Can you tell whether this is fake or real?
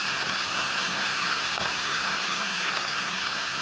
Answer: fake